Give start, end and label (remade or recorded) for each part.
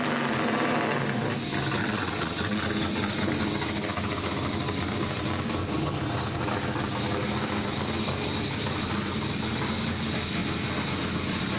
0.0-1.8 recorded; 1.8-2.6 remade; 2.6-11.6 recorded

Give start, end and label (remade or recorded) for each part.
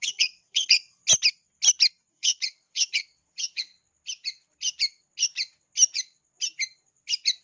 0.0-1.0 remade; 1.0-2.1 recorded; 2.1-3.7 remade; 3.7-7.4 recorded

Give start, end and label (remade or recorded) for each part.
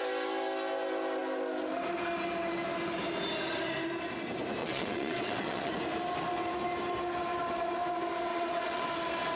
0.0-4.6 recorded; 4.6-5.7 remade; 5.7-8.3 recorded; 8.3-8.9 remade; 8.9-9.4 recorded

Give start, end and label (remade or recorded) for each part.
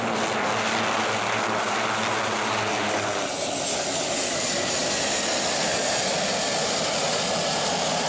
0.0-8.1 recorded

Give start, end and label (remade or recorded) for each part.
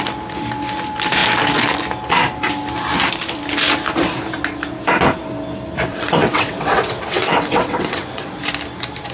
0.0-5.9 recorded; 5.9-8.4 remade; 8.4-9.1 recorded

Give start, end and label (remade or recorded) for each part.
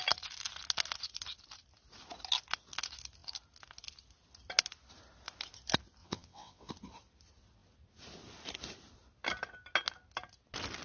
0.0-6.0 recorded; 6.0-6.7 remade; 6.7-10.8 recorded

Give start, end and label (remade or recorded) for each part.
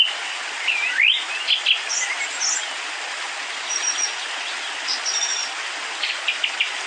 0.0-6.9 recorded